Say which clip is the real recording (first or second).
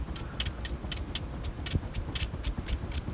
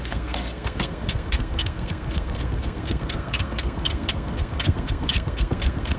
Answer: first